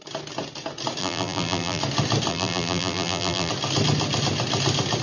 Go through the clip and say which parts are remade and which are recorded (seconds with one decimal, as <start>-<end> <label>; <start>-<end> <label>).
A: 0.0-1.0 recorded; 1.0-1.8 remade; 1.8-2.3 recorded; 2.3-3.5 remade; 3.5-5.0 recorded